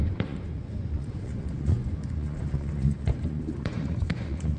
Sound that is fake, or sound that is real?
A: fake